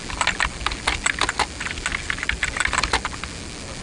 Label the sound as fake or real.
real